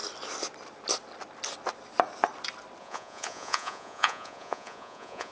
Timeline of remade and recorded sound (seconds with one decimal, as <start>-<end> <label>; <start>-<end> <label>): 0.0-2.8 recorded; 2.8-5.3 remade